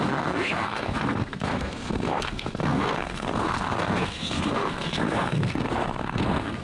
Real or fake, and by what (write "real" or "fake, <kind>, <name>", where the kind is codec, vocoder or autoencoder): fake, codec, SNAC